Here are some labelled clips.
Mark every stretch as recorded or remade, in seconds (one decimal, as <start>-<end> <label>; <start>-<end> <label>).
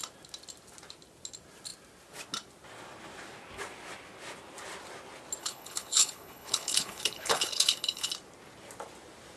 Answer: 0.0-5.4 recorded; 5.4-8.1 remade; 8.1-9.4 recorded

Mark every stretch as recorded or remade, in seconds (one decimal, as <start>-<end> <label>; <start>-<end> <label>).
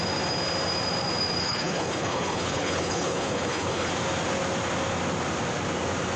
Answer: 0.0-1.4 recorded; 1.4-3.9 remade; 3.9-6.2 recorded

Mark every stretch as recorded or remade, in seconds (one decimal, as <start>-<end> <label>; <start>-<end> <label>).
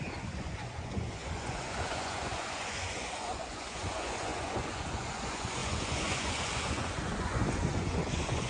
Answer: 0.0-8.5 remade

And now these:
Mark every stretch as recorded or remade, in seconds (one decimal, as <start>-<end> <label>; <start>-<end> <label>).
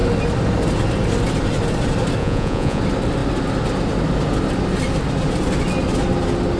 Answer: 0.0-2.2 recorded; 2.2-2.8 remade; 2.8-6.6 recorded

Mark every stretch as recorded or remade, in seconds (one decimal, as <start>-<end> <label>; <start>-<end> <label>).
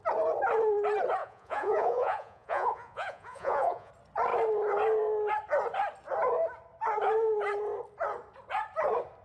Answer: 0.0-1.2 recorded; 1.2-3.9 remade; 3.9-9.2 recorded